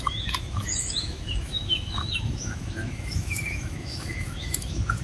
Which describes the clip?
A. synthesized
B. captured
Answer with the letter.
A